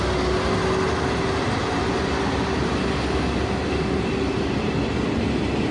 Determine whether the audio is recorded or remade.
recorded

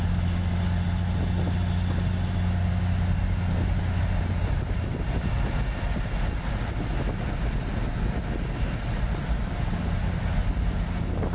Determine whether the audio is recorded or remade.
recorded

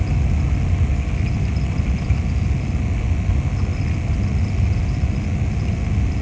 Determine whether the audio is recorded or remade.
recorded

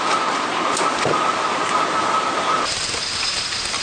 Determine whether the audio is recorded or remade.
recorded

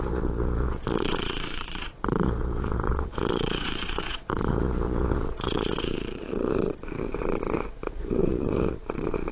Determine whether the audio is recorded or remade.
remade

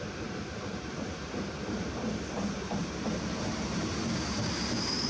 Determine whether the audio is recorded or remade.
remade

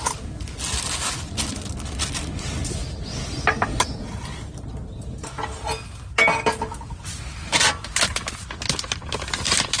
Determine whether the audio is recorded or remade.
recorded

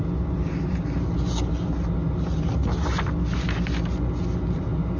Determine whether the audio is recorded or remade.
recorded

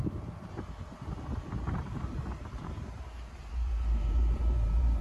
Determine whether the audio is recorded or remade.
remade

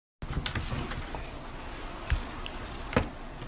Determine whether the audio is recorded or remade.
recorded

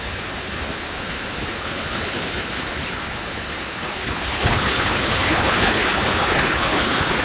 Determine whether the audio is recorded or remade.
remade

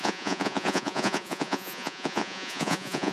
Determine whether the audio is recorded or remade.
remade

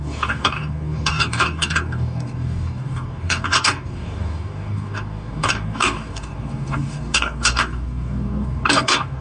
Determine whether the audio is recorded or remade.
remade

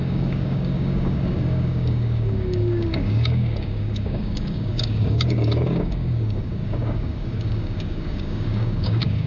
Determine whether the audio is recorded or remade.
remade